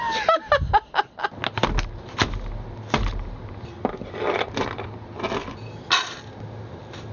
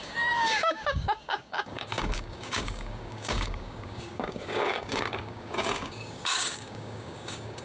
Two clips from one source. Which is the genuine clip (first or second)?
first